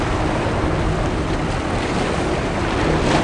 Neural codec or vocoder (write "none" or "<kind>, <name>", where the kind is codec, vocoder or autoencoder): none